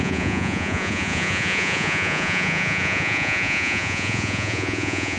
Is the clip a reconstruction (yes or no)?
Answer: yes